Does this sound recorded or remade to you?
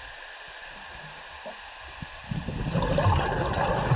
recorded